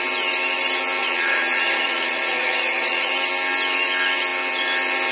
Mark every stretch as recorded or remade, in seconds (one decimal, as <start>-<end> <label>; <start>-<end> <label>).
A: 0.0-1.0 recorded; 1.0-3.1 remade; 3.1-5.1 recorded